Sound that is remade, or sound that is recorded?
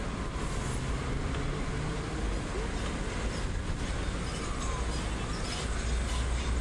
recorded